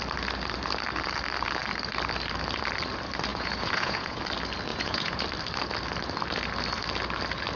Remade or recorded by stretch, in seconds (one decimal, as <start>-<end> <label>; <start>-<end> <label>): 0.0-3.3 recorded; 3.3-4.2 remade; 4.2-4.7 recorded; 4.7-5.2 remade; 5.2-7.6 recorded